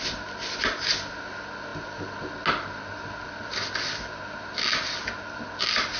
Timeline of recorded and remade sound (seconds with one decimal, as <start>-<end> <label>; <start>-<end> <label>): 0.0-6.0 recorded